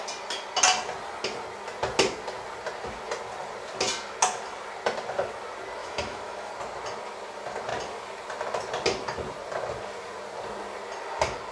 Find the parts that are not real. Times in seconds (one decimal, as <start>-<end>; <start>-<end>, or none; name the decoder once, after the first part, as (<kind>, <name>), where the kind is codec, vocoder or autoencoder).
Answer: 5.8-6.5 (autoencoder, DAC-VAE)